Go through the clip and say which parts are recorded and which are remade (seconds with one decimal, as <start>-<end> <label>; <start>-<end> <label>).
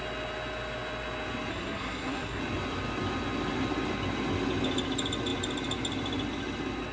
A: 0.0-1.5 recorded; 1.5-2.4 remade; 2.4-6.9 recorded